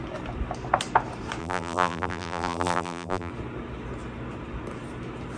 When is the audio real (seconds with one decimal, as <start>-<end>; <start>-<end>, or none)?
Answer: 0.0-1.4; 3.3-5.4